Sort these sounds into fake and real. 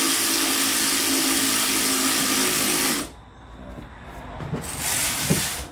real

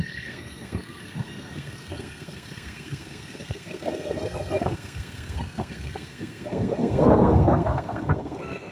fake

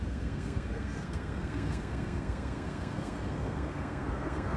fake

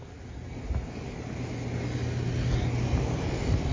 real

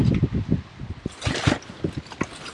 real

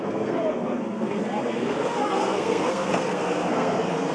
fake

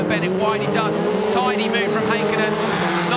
real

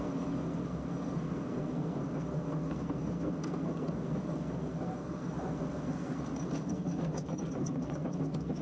fake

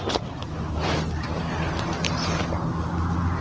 real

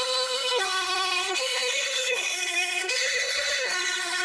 fake